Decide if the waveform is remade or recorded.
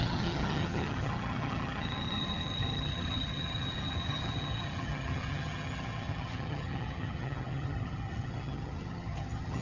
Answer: remade